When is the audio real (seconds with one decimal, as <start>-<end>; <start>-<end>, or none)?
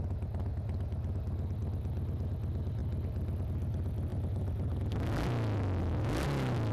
0.0-4.1; 4.8-6.7